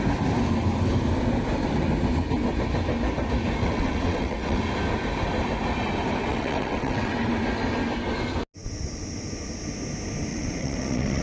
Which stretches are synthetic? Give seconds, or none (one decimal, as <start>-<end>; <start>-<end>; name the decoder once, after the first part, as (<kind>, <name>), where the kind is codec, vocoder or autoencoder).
3.6-4.6 (vocoder, WaveNeXt); 6.3-7.1; 10.3-11.2